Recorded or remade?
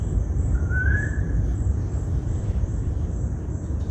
remade